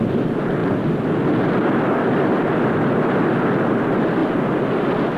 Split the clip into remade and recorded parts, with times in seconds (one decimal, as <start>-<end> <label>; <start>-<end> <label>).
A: 0.0-5.2 recorded